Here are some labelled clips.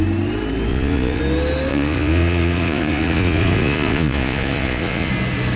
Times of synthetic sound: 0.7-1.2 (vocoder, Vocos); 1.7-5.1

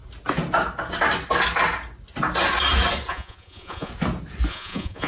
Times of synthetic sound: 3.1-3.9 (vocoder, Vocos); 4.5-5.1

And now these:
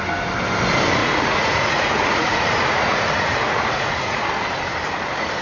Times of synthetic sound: 1.0-4.2 (vocoder, Vocos)

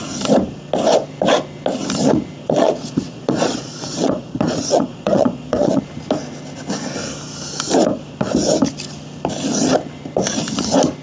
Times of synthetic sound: 2.4-5.8 (vocoder, Vocos)

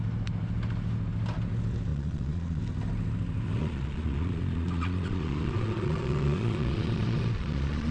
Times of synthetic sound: 1.9-2.6 (vocoder, Vocos); 3.6-7.9

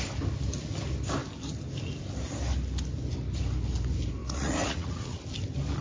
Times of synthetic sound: 4.2-5.2 (vocoder, Vocos)